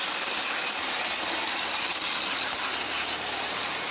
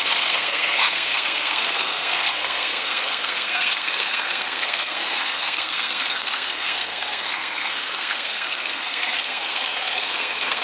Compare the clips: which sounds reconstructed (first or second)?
second